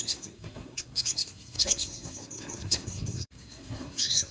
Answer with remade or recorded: remade